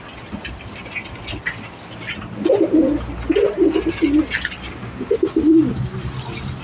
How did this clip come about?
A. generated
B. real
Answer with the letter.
B